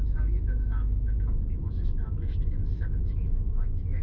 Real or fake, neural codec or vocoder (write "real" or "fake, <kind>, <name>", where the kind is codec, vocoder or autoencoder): fake, autoencoder, DAC-VAE